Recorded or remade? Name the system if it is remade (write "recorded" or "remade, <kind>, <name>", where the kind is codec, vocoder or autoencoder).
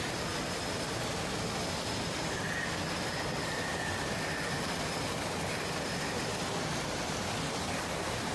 recorded